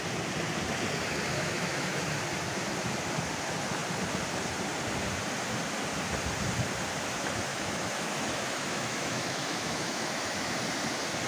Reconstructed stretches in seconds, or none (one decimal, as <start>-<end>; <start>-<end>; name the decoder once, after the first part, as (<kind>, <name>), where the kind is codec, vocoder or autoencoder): 1.3-2.0 (autoencoder, DAC-VAE); 7.5-10.6